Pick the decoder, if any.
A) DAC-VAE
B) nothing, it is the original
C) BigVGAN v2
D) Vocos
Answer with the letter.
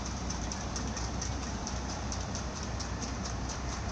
C